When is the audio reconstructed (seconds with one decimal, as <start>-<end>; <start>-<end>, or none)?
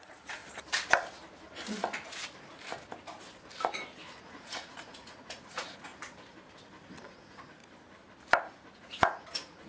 0.0-0.4; 4.2-5.9; 7.1-7.6; 8.7-9.7